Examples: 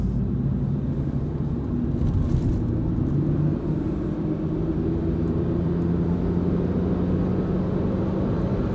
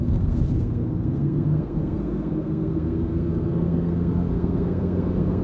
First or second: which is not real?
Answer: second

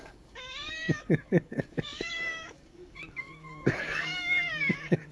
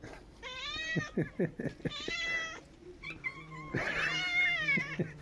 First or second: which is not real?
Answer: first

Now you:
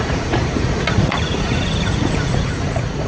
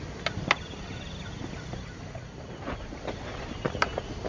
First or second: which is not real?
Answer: first